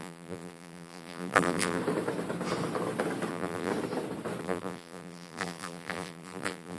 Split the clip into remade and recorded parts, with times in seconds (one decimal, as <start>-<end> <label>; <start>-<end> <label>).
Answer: 0.0-1.8 remade; 1.8-3.3 recorded; 3.3-3.7 remade; 3.7-4.4 recorded; 4.4-6.8 remade